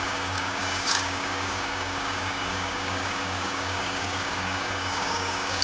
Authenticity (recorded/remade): remade